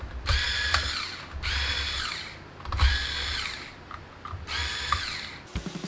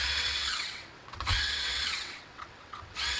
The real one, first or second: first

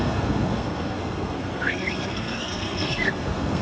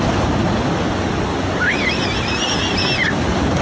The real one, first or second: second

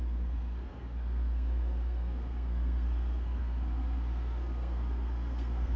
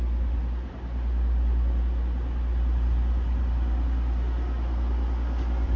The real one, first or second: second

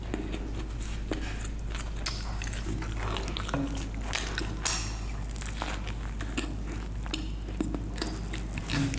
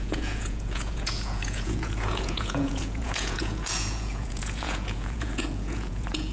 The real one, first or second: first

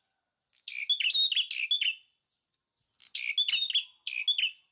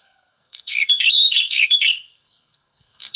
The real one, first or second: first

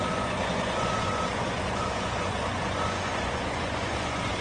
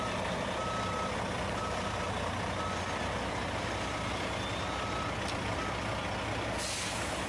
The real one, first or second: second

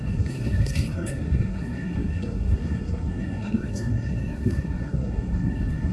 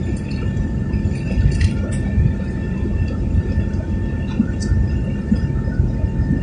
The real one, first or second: second